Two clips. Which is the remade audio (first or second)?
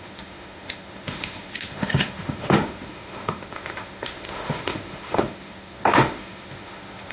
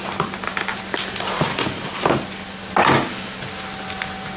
first